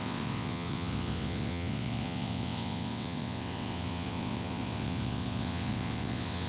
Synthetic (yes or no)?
yes